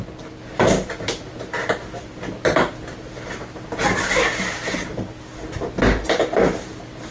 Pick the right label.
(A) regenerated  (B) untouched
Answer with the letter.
B